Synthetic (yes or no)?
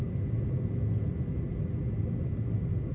no